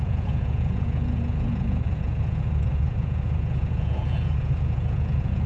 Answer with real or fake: fake